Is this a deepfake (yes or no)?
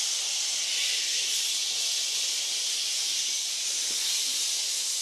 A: no